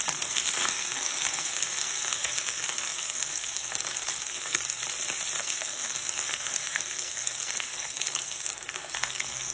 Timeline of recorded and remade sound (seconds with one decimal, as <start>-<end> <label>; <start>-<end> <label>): 0.0-4.8 remade; 4.8-5.4 recorded; 5.4-9.5 remade